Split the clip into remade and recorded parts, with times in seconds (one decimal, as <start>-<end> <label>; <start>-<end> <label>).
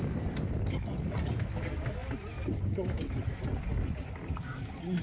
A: 0.0-5.0 recorded